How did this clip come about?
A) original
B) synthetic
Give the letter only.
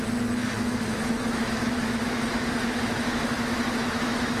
B